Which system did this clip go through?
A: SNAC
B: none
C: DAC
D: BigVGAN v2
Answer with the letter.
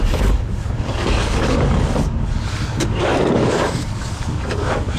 C